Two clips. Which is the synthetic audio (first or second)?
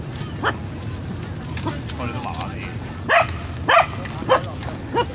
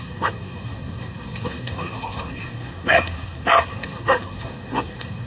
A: second